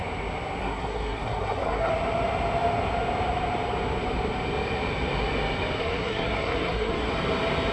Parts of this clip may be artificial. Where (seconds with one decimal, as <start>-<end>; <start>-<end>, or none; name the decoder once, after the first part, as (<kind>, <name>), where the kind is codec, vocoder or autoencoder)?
0.6-1.9 (codec, SNAC); 5.8-7.1